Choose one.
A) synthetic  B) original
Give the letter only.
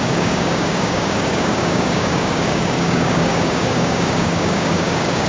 A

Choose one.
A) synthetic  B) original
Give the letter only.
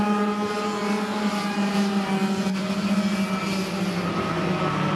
B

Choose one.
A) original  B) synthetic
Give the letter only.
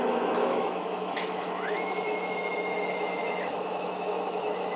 B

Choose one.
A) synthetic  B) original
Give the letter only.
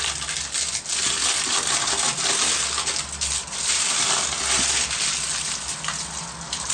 B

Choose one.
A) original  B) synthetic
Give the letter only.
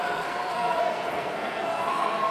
B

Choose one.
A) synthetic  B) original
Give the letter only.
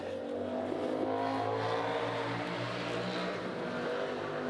B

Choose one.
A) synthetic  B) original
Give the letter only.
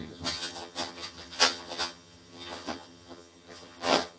A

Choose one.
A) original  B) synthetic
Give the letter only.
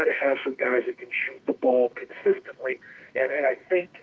B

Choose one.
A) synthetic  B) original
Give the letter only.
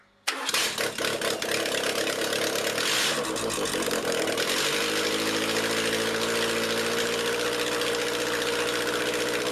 B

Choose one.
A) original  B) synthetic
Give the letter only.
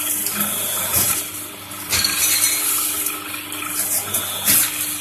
A